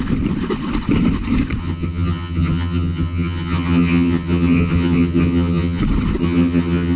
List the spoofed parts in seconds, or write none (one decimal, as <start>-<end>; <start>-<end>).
1.6-5.8; 6.2-7.0